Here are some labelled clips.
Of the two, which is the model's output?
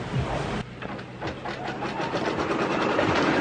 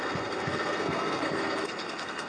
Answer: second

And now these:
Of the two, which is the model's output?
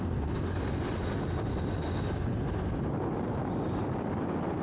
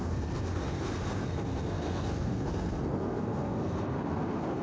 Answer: second